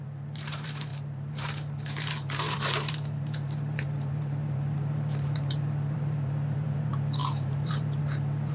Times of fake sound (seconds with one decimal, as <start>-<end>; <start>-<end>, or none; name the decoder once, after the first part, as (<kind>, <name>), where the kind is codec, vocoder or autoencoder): 0.0-8.5 (vocoder, BigVGAN v2)